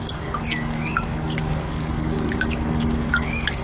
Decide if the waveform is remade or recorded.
remade